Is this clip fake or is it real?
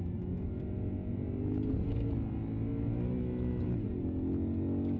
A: real